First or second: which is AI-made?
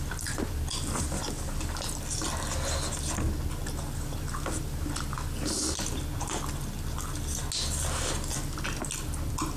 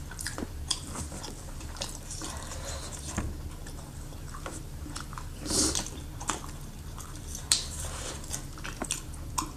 second